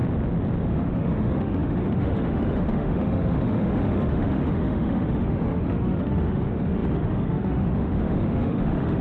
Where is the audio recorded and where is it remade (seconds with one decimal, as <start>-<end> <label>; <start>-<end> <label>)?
0.0-0.6 recorded; 0.6-9.0 remade